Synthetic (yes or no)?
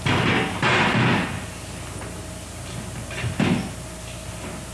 no